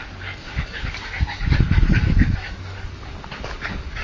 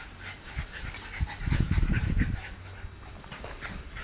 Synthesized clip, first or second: first